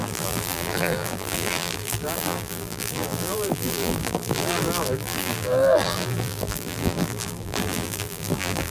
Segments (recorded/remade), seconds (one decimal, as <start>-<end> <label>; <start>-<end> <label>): 0.0-8.7 remade